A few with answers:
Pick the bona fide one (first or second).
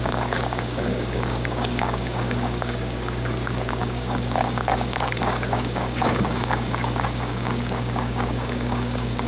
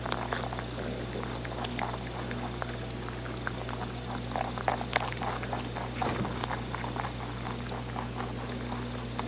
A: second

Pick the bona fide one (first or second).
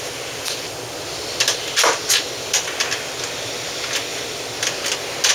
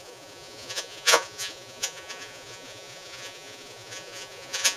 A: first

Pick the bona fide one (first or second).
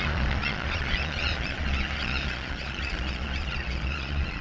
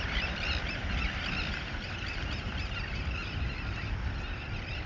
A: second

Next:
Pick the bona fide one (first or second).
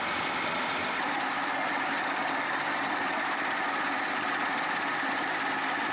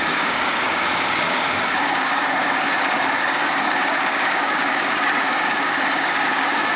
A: first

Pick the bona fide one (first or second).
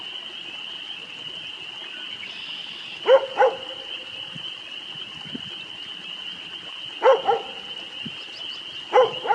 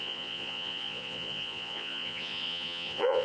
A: first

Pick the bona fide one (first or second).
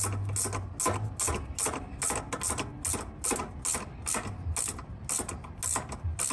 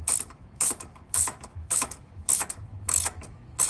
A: first